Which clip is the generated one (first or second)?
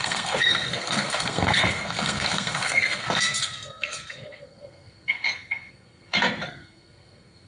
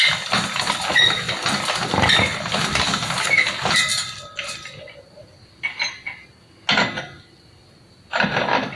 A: first